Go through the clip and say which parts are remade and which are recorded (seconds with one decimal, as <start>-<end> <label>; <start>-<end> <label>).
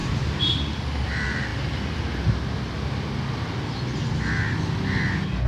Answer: 0.0-0.5 remade; 0.5-5.5 recorded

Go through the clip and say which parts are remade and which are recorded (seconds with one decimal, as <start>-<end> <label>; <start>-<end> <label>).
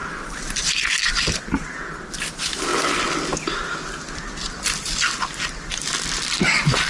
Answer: 0.0-6.9 recorded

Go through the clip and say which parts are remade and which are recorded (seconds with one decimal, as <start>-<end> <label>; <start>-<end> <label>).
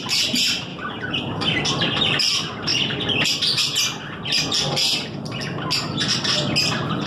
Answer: 0.0-0.7 recorded; 0.7-1.4 remade; 1.4-7.1 recorded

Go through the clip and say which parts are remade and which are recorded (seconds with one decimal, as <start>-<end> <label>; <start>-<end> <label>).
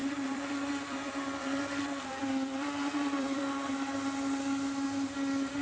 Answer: 0.0-3.4 remade; 3.4-5.6 recorded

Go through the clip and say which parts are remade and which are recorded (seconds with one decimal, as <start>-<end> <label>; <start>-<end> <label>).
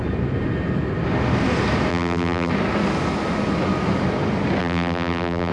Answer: 0.0-1.9 recorded; 1.9-2.5 remade; 2.5-4.6 recorded; 4.6-5.5 remade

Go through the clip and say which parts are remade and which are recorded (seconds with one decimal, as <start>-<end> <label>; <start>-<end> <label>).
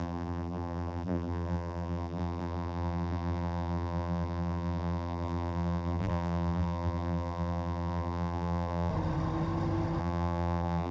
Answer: 0.0-8.9 remade; 8.9-10.0 recorded; 10.0-10.9 remade